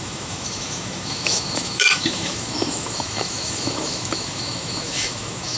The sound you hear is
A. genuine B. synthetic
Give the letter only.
B